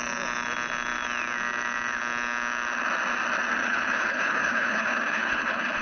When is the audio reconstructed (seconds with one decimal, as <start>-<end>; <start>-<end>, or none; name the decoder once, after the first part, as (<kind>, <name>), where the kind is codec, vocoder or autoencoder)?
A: 3.6-5.8 (codec, HILCodec)